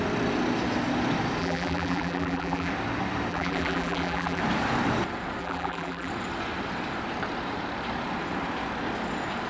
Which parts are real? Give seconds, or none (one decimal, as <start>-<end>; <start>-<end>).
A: 0.0-1.4; 2.7-3.3; 4.4-5.4; 6.1-9.5